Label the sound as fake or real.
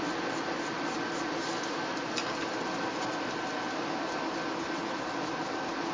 real